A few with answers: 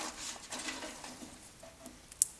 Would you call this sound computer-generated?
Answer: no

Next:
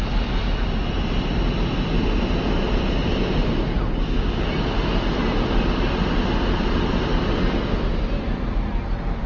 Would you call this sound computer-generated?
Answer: no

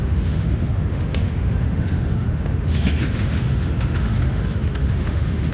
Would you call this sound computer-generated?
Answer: yes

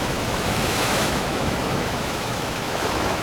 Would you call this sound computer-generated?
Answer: yes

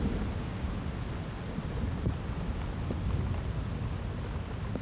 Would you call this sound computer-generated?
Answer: no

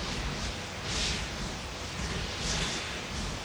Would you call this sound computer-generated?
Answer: no